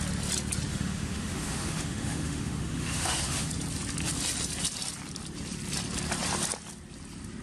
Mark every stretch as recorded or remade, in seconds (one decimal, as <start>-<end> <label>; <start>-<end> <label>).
0.0-0.7 recorded; 0.7-3.5 remade; 3.5-7.4 recorded